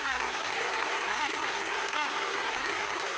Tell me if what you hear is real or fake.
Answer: fake